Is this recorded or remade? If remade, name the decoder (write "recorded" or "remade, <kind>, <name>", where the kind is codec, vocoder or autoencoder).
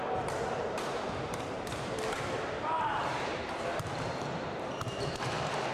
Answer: remade, vocoder, BigVGAN v2